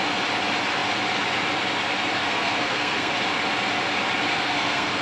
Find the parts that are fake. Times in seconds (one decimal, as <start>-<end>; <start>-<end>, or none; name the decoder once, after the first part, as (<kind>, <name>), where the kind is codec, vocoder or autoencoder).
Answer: 2.2-3.1 (codec, SNAC); 4.3-5.0